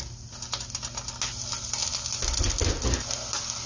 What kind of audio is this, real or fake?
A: real